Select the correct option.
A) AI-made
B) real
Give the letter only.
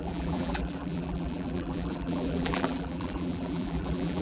A